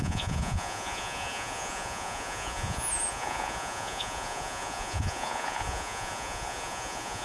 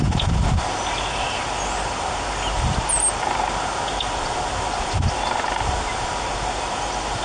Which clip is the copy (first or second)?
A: first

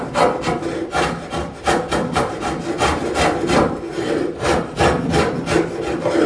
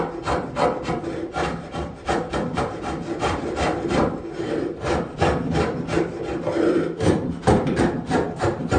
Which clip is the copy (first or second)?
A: second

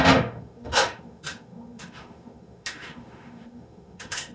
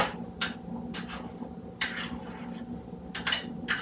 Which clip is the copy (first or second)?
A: first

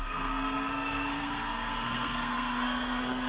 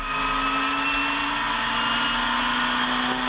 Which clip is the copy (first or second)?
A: first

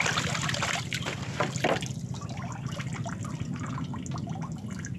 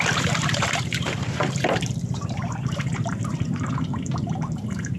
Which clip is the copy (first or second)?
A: second